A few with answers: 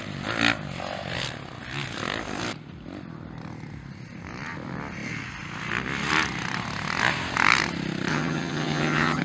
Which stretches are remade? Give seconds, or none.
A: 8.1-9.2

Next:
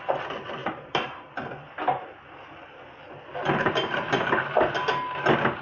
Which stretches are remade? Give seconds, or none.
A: 0.6-1.5; 3.4-4.2

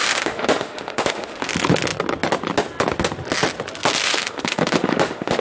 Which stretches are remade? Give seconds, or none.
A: 0.0-1.5; 4.0-5.4